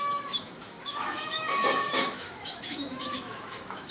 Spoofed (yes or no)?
yes